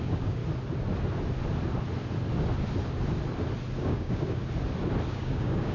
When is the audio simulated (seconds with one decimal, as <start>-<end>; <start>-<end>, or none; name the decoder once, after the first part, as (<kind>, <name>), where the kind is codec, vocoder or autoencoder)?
0.0-0.4 (codec, DAC); 3.8-4.4; 5.1-5.7